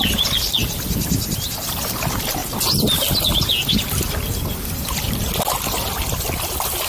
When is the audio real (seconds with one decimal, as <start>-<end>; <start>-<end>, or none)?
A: 2.4-4.7